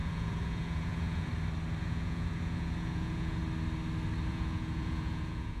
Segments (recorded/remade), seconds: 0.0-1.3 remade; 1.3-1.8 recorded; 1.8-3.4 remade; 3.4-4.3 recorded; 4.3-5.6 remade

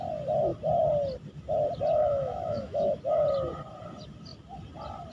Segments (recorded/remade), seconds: 0.0-2.0 recorded; 2.0-3.0 remade; 3.0-5.1 recorded

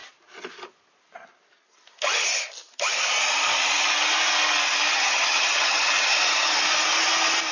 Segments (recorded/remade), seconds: 0.0-4.9 recorded; 4.9-6.5 remade; 6.5-7.5 recorded

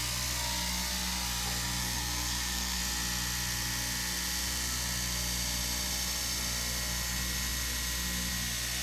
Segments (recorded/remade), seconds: 0.0-1.8 recorded; 1.8-2.8 remade; 2.8-8.8 recorded

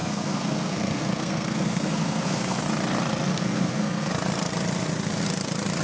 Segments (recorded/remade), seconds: 0.0-2.6 remade; 2.6-3.3 recorded; 3.3-4.1 remade; 4.1-5.8 recorded

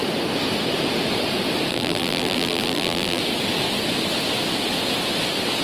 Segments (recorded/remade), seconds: 0.0-1.7 recorded; 1.7-3.2 remade; 3.2-5.6 recorded

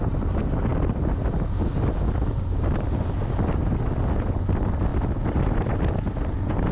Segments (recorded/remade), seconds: 0.0-4.9 recorded; 4.9-5.9 remade; 5.9-6.7 recorded